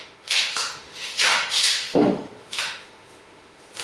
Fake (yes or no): yes